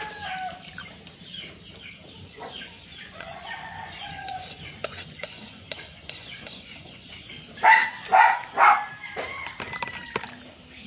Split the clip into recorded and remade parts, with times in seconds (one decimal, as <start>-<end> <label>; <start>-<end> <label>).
0.0-2.2 recorded; 2.2-7.3 remade; 7.3-10.9 recorded